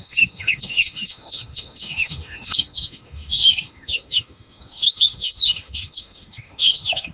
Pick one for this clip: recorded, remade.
remade